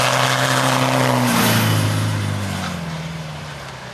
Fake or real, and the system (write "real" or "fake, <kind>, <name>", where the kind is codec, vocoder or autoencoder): real